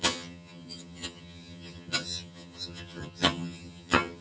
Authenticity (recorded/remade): remade